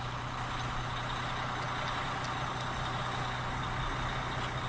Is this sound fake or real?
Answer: real